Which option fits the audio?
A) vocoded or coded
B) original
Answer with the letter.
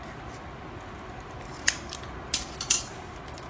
B